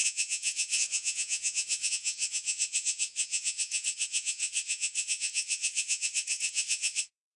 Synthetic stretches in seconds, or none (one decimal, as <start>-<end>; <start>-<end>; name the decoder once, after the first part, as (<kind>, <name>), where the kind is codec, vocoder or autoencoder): 0.0-7.4 (vocoder, Vocos)